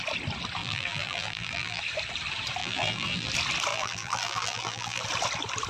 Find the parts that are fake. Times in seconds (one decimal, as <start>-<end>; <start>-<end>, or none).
0.6-1.8; 2.6-3.3; 3.7-5.0